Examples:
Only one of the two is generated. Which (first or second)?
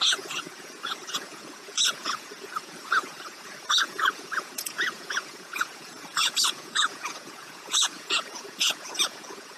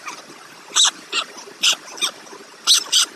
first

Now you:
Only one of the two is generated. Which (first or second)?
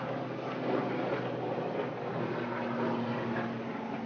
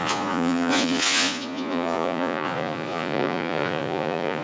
second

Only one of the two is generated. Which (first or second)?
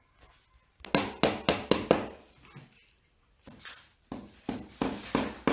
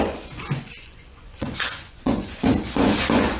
second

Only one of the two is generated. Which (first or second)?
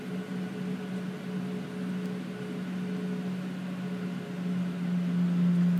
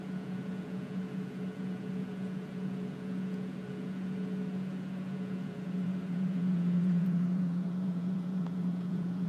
second